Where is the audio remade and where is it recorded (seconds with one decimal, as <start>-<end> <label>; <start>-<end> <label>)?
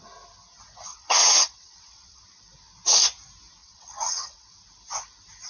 0.0-0.9 recorded; 0.9-2.2 remade; 2.2-3.6 recorded; 3.6-4.6 remade; 4.6-5.5 recorded